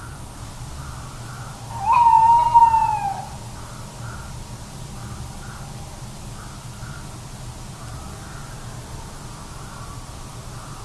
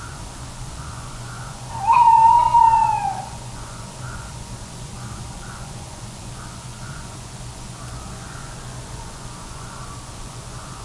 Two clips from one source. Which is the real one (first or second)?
first